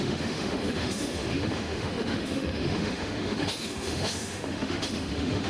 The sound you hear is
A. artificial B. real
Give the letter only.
A